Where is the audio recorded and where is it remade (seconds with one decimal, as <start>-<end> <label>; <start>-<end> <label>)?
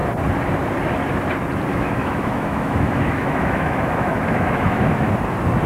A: 0.0-1.7 recorded; 1.7-5.1 remade; 5.1-5.7 recorded